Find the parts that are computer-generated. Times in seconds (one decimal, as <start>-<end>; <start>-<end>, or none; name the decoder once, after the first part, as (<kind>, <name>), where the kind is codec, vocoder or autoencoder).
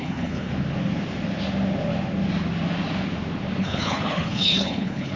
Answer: 0.0-0.5 (codec, HILCodec); 3.6-5.2